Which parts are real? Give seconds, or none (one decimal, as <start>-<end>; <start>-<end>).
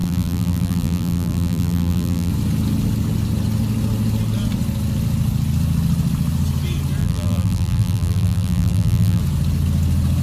2.3-7.0; 9.2-10.2